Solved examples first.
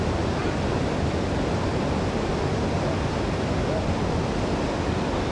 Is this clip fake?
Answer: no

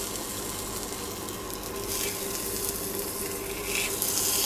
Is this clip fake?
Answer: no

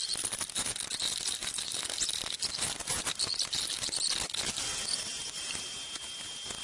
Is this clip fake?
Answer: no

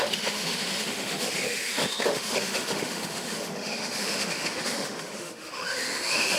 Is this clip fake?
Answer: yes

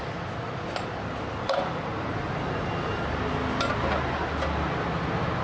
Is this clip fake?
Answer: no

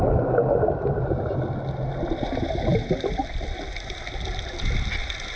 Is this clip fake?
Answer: no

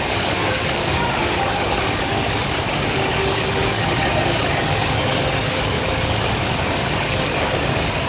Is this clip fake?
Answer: yes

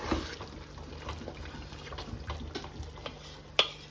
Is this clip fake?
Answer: no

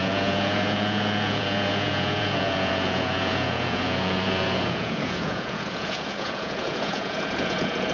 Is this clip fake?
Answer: yes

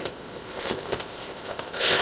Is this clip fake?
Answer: yes